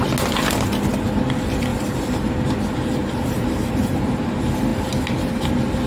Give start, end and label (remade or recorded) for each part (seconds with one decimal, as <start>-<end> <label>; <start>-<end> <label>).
0.0-1.7 recorded; 1.7-2.3 remade; 2.3-3.0 recorded; 3.0-4.2 remade; 4.2-5.9 recorded